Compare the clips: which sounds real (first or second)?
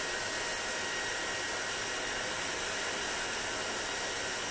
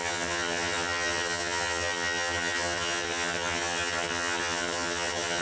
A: first